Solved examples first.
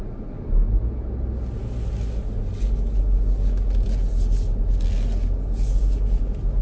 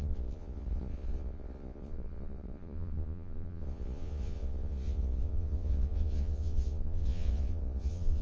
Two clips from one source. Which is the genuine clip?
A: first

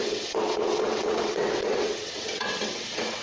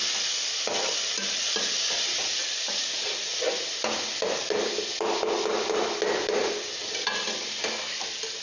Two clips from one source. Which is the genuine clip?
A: second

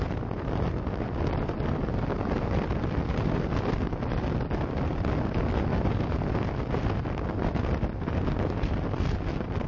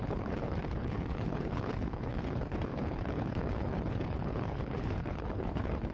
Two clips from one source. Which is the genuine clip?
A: first